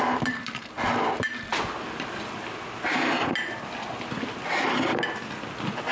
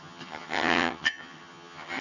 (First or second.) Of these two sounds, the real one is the first